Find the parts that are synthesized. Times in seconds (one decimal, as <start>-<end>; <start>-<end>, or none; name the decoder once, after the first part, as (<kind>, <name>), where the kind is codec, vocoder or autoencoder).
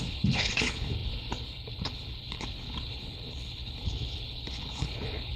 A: 0.0-5.4 (codec, HILCodec)